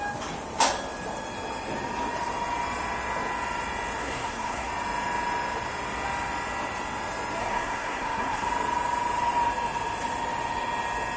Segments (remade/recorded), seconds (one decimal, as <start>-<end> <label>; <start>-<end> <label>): 0.0-4.0 recorded; 4.0-4.7 remade; 4.7-7.4 recorded; 7.4-8.5 remade; 8.5-11.2 recorded